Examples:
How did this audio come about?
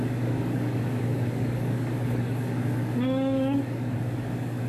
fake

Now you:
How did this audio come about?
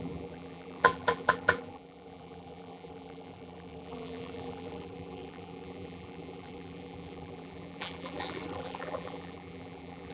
fake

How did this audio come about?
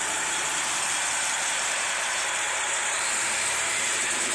fake